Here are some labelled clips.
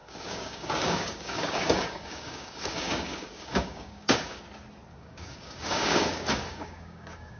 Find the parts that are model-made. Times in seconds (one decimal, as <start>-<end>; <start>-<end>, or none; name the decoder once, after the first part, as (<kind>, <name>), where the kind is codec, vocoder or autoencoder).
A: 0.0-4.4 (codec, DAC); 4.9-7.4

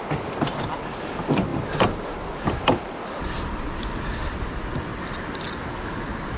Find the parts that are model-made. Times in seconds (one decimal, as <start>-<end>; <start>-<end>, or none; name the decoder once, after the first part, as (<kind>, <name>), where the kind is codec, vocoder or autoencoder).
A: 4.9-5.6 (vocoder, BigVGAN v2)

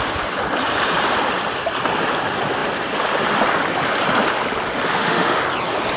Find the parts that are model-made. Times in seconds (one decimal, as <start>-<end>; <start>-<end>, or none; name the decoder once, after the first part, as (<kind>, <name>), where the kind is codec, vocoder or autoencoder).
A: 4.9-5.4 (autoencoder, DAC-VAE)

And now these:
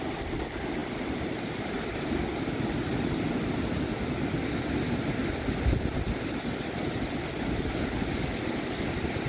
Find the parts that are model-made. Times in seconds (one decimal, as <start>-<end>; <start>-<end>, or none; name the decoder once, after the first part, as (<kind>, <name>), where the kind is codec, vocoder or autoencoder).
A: none